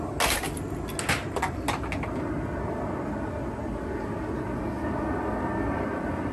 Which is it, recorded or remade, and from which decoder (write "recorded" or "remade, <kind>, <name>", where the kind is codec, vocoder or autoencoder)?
recorded